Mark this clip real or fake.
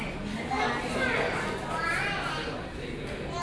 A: real